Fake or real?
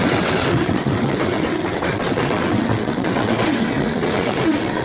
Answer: fake